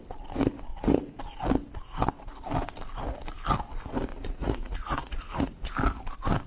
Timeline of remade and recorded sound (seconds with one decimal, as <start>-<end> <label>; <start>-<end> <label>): 0.0-0.7 recorded; 0.7-1.2 remade; 1.2-4.1 recorded; 4.1-5.7 remade; 5.7-6.5 recorded